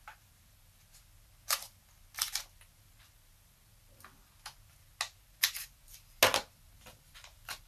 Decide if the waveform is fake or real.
real